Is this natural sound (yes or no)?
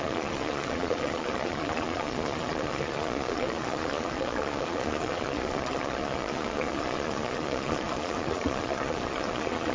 no